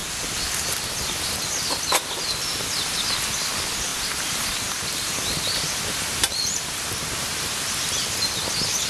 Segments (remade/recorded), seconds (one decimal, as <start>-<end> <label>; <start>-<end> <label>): 0.0-3.9 recorded; 3.9-7.6 remade; 7.6-8.9 recorded